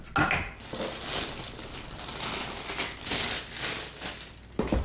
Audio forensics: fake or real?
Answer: real